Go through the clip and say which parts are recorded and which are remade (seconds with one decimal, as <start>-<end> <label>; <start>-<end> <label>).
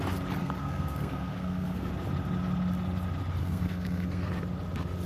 0.0-0.4 recorded; 0.4-1.9 remade; 1.9-3.4 recorded; 3.4-4.4 remade; 4.4-5.1 recorded